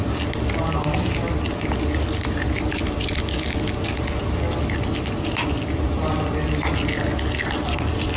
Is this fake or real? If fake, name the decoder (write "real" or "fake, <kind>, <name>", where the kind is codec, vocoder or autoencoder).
real